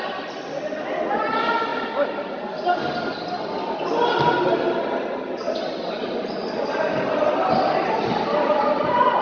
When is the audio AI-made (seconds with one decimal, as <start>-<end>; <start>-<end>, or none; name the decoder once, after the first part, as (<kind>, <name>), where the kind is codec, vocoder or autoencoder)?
none